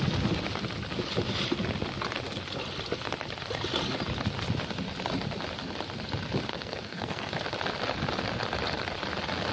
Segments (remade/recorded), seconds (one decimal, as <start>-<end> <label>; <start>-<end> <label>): 0.0-6.5 recorded; 6.5-7.3 remade; 7.3-9.5 recorded